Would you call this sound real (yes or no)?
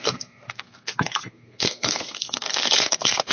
no